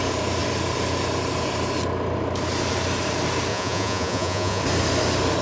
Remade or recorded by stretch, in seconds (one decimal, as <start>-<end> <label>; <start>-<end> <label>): 0.0-3.5 recorded; 3.5-4.6 remade; 4.6-5.4 recorded